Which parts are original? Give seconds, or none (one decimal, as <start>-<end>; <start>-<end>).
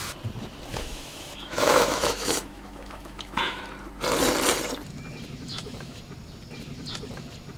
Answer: 0.0-0.7; 3.6-5.5; 6.0-7.6